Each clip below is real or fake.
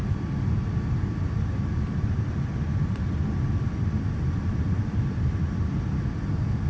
real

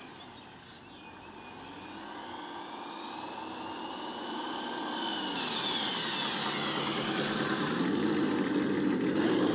real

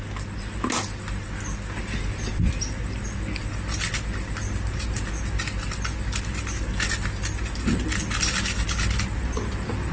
real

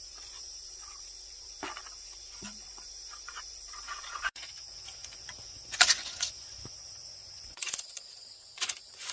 fake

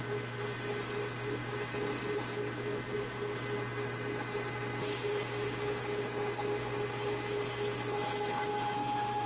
real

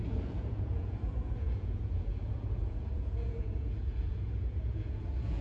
fake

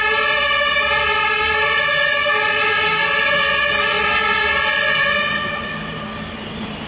real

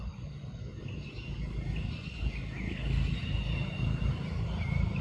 real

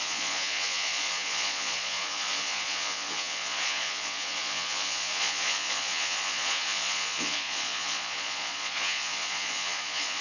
fake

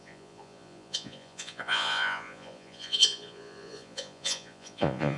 fake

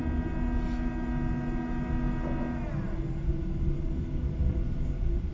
real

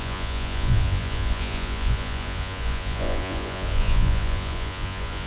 fake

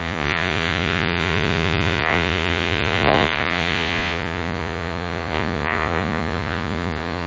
fake